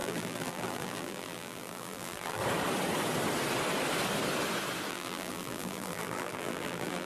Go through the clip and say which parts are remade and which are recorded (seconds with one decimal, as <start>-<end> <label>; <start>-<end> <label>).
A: 0.0-2.4 remade; 2.4-4.9 recorded; 4.9-7.0 remade